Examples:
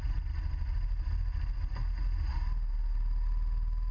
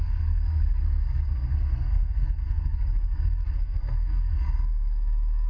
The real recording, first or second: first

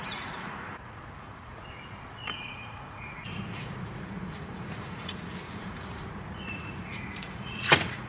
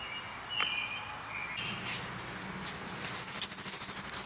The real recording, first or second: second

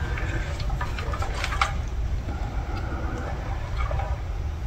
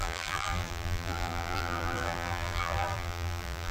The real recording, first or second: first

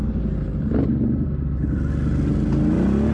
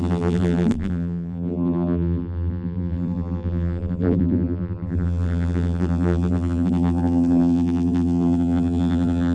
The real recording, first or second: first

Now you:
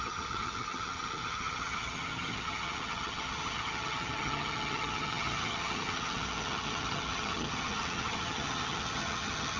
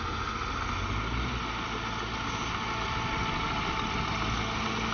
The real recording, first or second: second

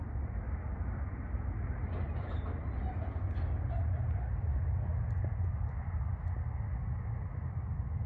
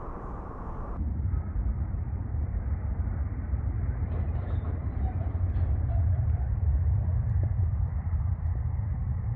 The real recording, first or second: first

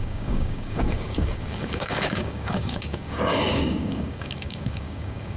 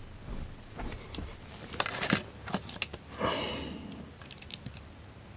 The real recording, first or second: second